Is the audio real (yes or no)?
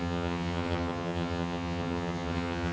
no